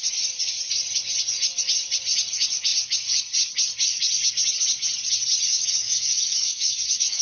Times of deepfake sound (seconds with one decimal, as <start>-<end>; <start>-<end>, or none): 5.5-7.2